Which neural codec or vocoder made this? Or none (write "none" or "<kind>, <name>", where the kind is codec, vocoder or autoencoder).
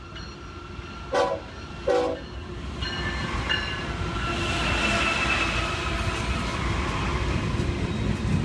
none